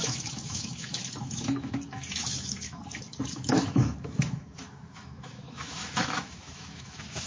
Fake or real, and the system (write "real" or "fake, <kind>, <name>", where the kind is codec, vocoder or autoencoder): fake, autoencoder, DAC-VAE